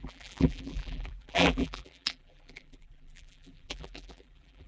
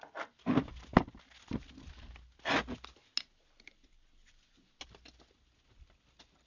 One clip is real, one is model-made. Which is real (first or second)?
second